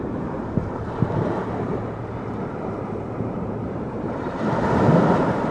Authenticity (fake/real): fake